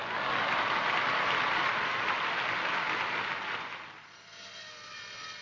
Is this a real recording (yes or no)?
yes